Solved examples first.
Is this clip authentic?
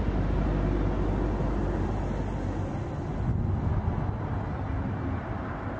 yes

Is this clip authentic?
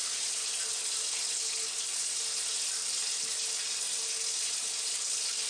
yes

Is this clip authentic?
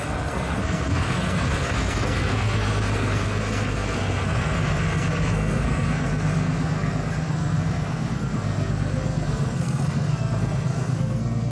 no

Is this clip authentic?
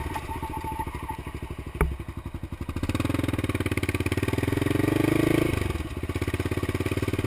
yes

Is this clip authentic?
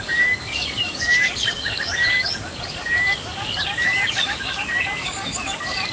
no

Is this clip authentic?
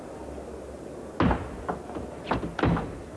yes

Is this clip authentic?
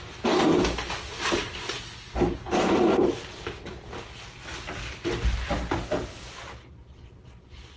yes